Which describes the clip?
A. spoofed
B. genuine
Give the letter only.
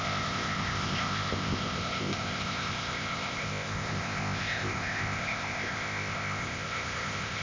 A